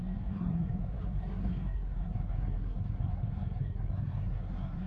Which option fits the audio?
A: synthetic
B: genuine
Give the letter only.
A